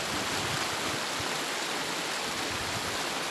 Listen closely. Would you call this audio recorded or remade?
recorded